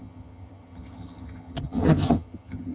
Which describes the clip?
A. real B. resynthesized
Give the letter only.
B